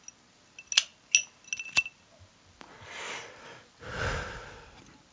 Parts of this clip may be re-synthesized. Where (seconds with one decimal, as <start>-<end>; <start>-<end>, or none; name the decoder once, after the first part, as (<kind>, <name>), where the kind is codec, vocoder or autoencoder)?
none